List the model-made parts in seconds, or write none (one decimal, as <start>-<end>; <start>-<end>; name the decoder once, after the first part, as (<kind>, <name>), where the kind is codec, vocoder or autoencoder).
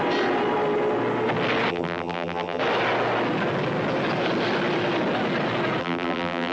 1.7-2.6 (vocoder, BigVGAN v2); 5.8-6.5